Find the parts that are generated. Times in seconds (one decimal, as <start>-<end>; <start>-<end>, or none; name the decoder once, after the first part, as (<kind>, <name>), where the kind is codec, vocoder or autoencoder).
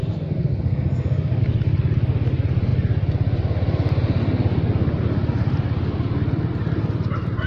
0.0-1.4 (codec, SNAC)